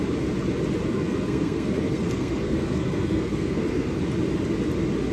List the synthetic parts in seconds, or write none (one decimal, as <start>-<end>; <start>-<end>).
0.9-4.0